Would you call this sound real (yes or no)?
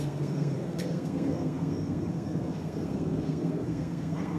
no